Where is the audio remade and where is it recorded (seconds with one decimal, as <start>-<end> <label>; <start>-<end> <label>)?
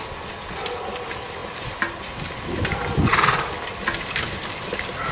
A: 0.0-5.1 recorded